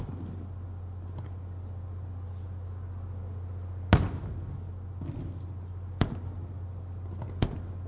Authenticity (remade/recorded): recorded